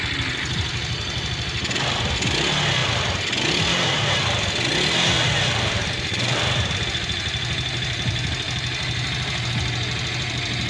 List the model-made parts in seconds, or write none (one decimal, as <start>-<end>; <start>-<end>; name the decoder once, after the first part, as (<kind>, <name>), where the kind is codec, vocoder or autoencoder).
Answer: 2.8-4.5 (vocoder, BigVGAN v2)